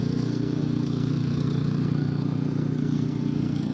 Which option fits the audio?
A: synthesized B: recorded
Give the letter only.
A